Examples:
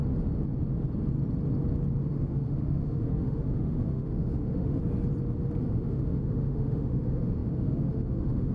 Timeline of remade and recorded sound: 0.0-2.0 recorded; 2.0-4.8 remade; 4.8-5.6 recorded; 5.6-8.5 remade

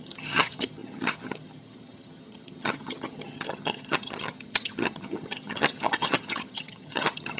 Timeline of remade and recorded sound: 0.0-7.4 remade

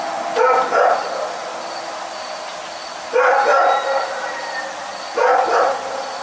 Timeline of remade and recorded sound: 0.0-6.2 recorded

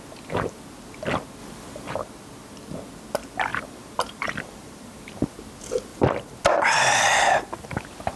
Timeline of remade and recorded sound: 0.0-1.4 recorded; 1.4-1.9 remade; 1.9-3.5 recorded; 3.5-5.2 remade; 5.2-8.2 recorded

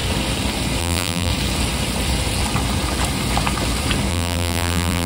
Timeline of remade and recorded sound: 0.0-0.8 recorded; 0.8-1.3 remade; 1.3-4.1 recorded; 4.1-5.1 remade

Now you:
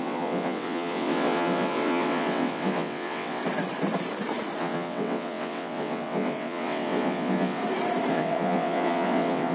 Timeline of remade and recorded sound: 0.0-3.4 remade; 3.4-4.6 recorded; 4.6-7.6 remade; 7.6-8.1 recorded; 8.1-9.5 remade